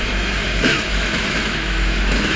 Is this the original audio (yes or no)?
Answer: no